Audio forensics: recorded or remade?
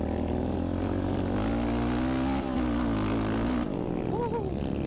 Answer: recorded